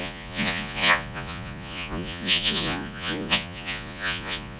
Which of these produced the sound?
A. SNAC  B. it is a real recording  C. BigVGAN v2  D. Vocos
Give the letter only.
D